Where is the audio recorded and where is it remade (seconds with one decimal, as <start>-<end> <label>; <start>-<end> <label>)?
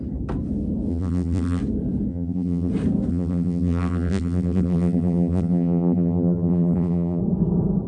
0.0-0.9 recorded; 0.9-1.6 remade; 1.6-2.1 recorded; 2.1-2.7 remade; 2.7-3.1 recorded; 3.1-7.2 remade; 7.2-7.9 recorded